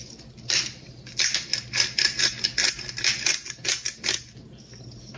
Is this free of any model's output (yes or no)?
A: yes